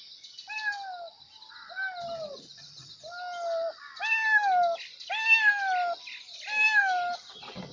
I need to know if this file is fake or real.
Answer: real